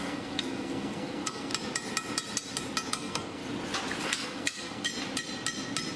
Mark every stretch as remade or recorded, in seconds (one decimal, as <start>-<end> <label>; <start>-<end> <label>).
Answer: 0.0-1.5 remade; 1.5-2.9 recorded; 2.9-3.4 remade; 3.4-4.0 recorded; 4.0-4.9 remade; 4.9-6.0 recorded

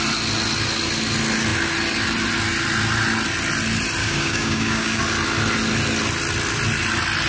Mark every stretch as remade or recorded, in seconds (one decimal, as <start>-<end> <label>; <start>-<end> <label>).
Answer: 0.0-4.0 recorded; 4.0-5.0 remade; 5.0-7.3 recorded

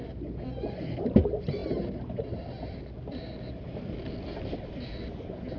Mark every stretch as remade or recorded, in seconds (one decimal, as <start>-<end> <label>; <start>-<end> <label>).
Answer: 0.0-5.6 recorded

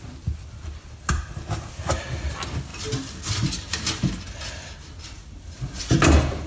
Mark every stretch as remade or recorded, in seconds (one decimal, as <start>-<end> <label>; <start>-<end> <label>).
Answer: 0.0-6.5 recorded

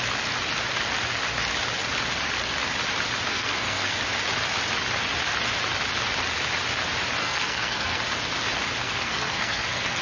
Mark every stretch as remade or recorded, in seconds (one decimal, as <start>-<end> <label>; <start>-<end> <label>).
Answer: 0.0-3.3 recorded; 3.3-4.0 remade; 4.0-7.2 recorded; 7.2-8.0 remade; 8.0-8.8 recorded; 8.8-10.0 remade

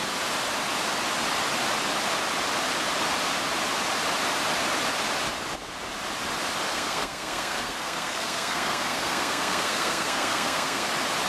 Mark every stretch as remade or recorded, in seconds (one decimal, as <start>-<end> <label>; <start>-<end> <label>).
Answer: 0.0-6.7 recorded; 6.7-10.9 remade; 10.9-11.3 recorded

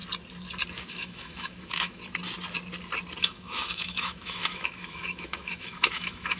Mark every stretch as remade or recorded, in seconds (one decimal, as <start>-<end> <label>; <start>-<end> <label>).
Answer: 0.0-0.9 recorded; 0.9-2.0 remade; 2.0-3.2 recorded; 3.2-6.4 remade